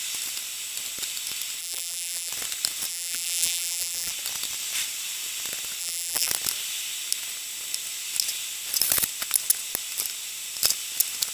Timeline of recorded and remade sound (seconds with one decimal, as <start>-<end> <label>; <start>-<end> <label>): 0.0-1.6 recorded; 1.6-2.3 remade; 2.3-2.9 recorded; 2.9-4.1 remade; 4.1-5.8 recorded; 5.8-6.3 remade; 6.3-11.3 recorded